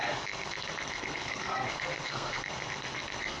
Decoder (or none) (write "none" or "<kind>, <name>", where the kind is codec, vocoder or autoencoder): codec, SNAC